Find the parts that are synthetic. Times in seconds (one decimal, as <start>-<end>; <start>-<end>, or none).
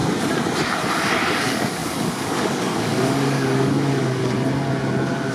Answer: 1.3-4.2